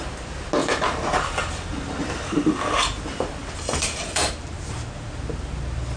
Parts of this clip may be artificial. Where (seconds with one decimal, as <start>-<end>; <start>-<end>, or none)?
0.6-1.4; 2.0-4.3